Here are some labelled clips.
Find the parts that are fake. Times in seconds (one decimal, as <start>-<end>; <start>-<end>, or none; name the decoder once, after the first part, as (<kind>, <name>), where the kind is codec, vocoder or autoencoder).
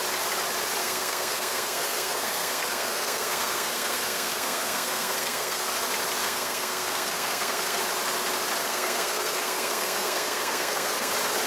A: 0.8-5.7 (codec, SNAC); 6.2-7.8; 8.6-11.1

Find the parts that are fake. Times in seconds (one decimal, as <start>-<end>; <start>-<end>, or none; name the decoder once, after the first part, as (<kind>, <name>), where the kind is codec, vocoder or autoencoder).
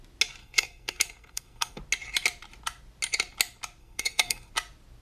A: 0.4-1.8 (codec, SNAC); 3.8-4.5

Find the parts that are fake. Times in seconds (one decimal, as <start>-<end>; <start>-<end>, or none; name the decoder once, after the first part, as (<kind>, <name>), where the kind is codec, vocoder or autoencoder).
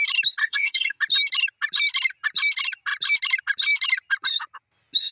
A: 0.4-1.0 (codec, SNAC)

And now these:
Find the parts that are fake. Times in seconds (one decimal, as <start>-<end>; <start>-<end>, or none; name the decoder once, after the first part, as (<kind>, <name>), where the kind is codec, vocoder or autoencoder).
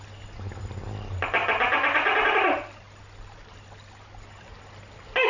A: none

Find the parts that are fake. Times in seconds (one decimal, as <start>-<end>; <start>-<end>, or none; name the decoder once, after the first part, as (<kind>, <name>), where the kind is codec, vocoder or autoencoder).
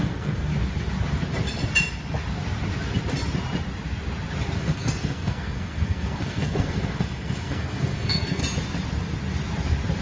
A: 0.0-0.5 (codec, SNAC); 4.6-8.4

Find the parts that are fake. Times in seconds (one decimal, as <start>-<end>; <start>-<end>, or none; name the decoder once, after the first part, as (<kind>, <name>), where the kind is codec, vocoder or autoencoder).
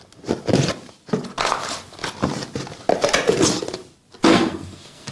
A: 4.3-5.1 (codec, SNAC)